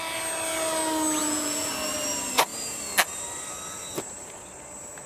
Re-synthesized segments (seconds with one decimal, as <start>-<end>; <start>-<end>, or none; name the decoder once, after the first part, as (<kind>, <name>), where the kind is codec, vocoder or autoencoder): 1.2-1.7 (vocoder, Vocos)